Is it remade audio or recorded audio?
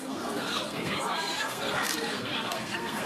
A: remade